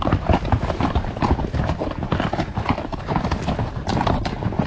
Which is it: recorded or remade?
recorded